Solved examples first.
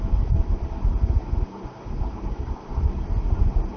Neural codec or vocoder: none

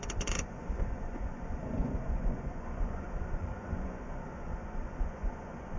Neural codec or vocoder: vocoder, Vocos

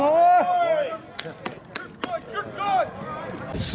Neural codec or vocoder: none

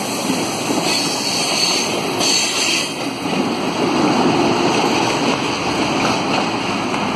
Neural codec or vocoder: none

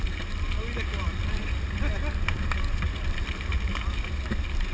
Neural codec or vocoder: none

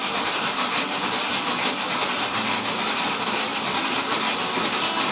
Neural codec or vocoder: none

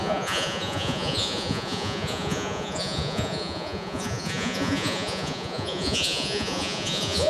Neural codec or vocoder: vocoder, Vocos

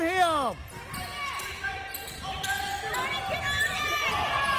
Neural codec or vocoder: none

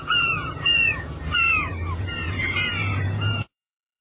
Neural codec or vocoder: vocoder, Vocos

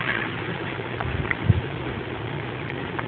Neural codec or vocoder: vocoder, Vocos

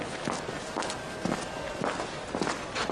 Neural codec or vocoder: none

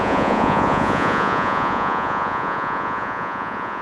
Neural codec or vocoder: vocoder, Vocos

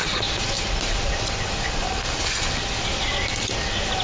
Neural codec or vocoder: none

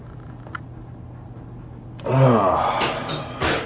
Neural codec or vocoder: none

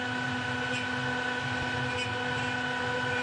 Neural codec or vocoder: none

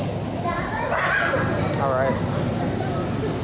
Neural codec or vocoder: none